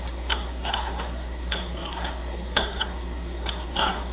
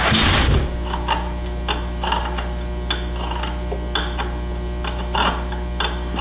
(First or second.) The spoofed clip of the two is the first